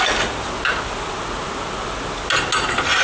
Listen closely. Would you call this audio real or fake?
real